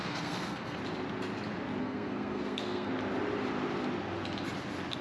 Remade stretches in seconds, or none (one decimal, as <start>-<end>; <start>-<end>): 0.0-0.8; 1.8-2.9